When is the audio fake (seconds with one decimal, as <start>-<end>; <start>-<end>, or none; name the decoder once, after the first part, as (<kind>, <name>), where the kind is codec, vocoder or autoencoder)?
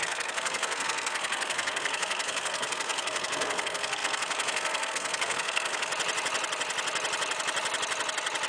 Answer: 0.0-5.9 (codec, SNAC)